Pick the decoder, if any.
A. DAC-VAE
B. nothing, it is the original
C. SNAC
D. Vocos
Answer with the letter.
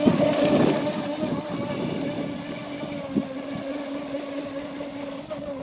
B